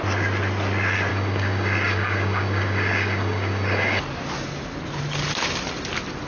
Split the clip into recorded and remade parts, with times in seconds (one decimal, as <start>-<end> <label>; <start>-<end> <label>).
0.0-1.1 recorded; 1.1-4.0 remade; 4.0-6.3 recorded